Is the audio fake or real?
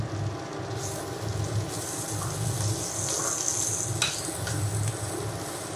real